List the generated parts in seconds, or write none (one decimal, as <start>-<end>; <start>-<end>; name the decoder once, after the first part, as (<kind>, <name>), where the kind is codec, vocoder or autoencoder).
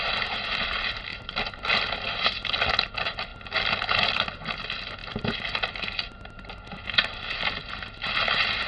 0.0-3.3 (vocoder, BigVGAN v2); 3.9-5.0; 5.7-8.7